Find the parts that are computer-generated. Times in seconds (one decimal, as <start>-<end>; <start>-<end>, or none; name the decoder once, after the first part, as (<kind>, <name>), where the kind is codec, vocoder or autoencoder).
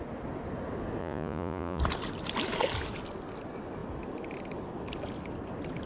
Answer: 1.0-1.8 (vocoder, Vocos)